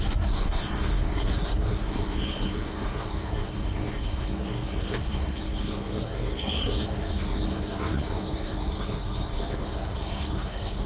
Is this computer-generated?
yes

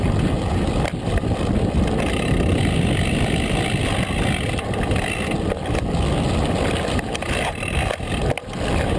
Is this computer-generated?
no